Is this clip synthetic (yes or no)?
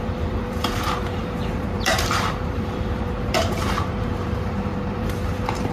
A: yes